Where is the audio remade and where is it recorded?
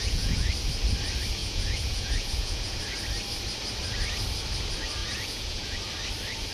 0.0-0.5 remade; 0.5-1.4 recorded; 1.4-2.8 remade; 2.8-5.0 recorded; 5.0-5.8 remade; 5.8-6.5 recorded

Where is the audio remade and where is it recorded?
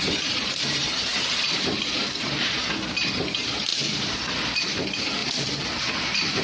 0.0-1.1 recorded; 1.1-2.0 remade; 2.0-3.7 recorded; 3.7-4.2 remade; 4.2-5.2 recorded; 5.2-5.9 remade; 5.9-6.4 recorded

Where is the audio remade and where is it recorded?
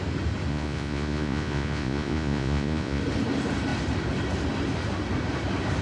0.0-0.5 recorded; 0.5-3.0 remade; 3.0-5.8 recorded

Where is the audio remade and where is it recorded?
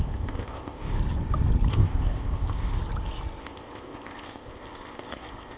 0.0-1.0 remade; 1.0-1.7 recorded; 1.7-2.8 remade; 2.8-3.4 recorded; 3.4-5.6 remade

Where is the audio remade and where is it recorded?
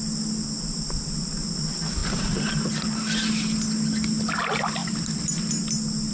0.0-2.0 recorded; 2.0-2.5 remade; 2.5-6.1 recorded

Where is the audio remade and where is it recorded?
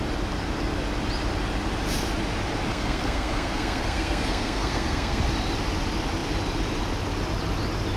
0.0-2.7 recorded; 2.7-5.2 remade; 5.2-8.0 recorded